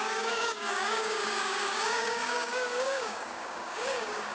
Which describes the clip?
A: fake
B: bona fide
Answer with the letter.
A